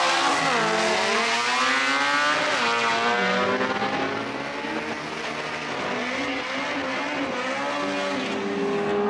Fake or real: real